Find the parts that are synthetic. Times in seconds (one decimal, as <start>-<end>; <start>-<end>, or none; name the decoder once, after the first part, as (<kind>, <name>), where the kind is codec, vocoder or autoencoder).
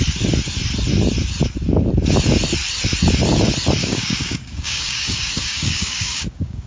3.8-6.7 (codec, DAC)